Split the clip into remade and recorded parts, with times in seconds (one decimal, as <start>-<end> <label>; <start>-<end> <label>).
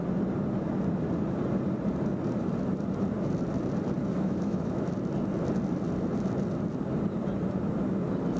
0.0-4.0 recorded; 4.0-4.9 remade; 4.9-8.4 recorded